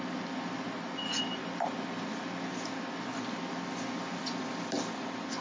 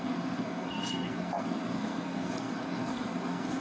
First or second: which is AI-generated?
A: second